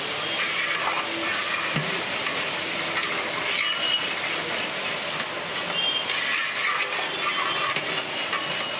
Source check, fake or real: real